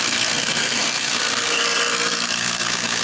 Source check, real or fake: fake